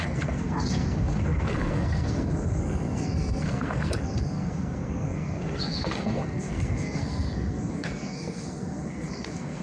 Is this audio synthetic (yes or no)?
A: yes